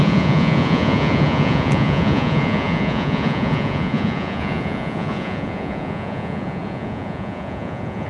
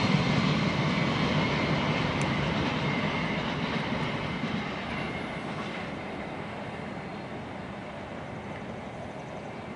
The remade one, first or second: first